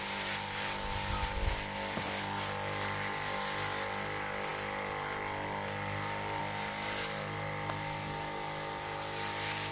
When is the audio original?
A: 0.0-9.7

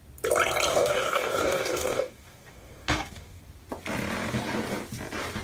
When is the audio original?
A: 0.0-0.7; 3.4-5.4

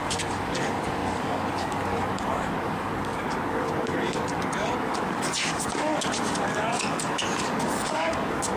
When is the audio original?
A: none

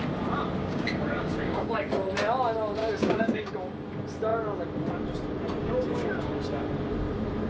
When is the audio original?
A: 0.0-0.6; 1.9-2.8; 3.5-5.6; 6.3-7.5

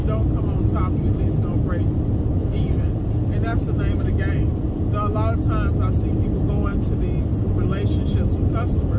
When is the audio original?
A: 0.0-9.0

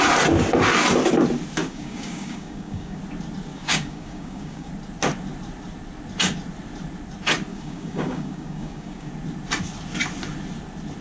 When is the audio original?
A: 0.0-1.6; 3.0-3.5; 4.7-7.5; 9.1-11.0

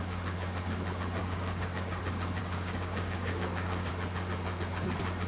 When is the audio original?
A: 0.0-1.2; 2.0-2.4; 3.9-5.3